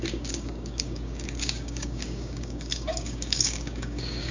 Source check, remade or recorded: remade